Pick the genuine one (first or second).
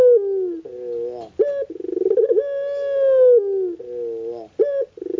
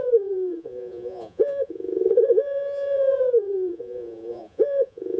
first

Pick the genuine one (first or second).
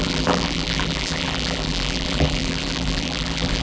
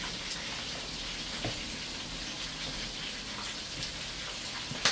second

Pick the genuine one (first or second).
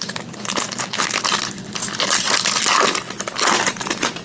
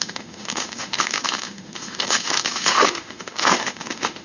first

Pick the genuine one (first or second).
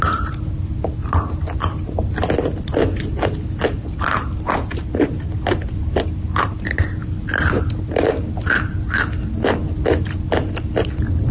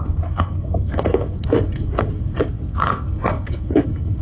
first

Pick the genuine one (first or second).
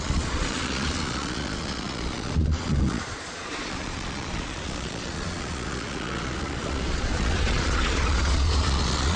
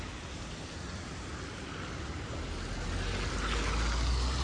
second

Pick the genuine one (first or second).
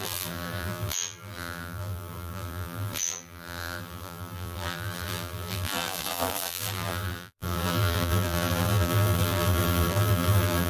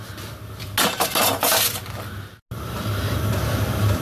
second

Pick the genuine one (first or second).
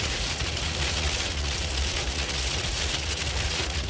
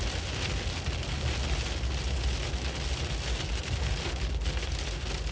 second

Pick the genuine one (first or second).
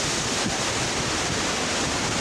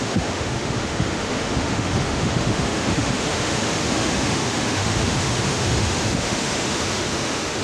first